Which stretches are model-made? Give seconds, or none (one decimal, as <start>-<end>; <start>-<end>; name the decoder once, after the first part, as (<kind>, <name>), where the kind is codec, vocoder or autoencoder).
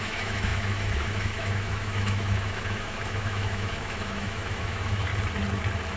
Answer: 0.0-5.1 (autoencoder, DAC-VAE)